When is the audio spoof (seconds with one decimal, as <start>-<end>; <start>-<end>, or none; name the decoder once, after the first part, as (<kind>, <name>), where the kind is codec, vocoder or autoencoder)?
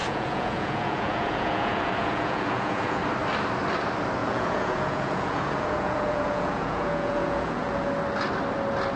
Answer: 0.0-3.0 (vocoder, Vocos); 4.2-7.9